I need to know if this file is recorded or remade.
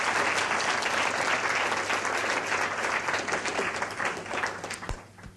recorded